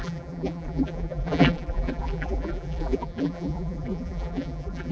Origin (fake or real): fake